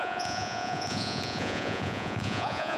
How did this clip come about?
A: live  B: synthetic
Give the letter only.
B